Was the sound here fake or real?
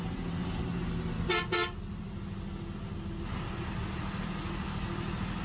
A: real